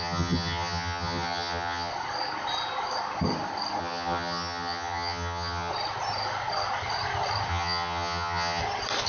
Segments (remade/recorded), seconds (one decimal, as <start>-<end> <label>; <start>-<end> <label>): 0.0-1.9 remade; 1.9-3.8 recorded; 3.8-5.7 remade; 5.7-7.5 recorded; 7.5-8.6 remade; 8.6-9.1 recorded